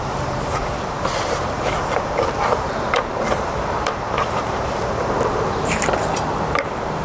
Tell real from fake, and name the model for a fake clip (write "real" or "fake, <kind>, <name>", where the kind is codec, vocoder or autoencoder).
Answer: fake, vocoder, BigVGAN v2